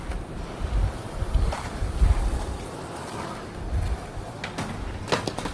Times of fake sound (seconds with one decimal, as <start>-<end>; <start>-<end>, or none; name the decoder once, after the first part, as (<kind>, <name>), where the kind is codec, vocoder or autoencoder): none